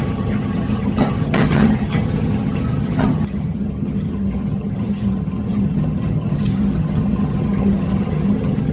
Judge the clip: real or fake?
fake